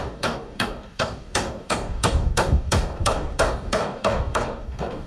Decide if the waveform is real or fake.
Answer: fake